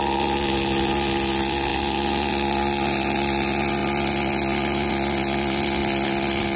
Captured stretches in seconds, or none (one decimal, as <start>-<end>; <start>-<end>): 0.0-6.6